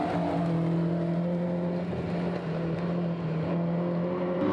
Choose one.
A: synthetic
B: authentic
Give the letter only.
B